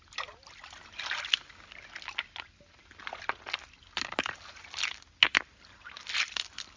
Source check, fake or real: real